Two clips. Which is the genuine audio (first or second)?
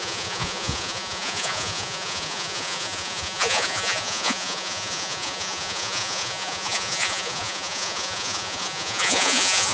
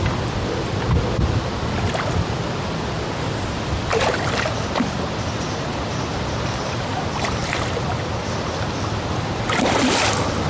second